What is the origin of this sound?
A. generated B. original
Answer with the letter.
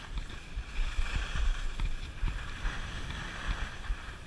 B